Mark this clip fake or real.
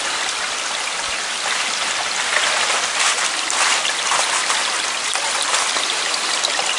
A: real